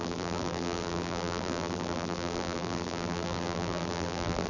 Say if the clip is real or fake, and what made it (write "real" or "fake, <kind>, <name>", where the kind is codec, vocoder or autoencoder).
fake, vocoder, BigVGAN v2